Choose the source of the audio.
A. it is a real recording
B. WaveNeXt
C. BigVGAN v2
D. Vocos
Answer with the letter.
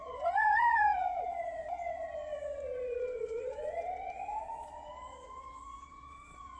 D